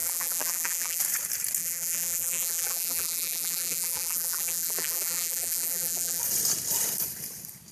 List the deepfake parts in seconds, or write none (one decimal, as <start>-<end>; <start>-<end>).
0.0-1.0; 1.6-6.2